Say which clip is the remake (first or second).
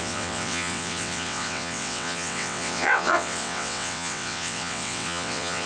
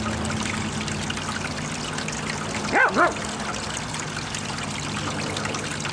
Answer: first